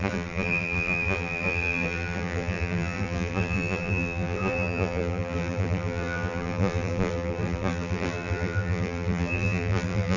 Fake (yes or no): yes